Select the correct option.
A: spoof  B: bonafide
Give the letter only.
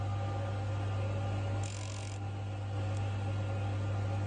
B